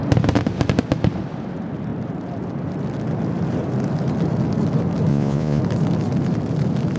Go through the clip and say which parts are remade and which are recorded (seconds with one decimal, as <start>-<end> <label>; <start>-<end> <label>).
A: 0.0-5.1 recorded; 5.1-5.6 remade; 5.6-7.0 recorded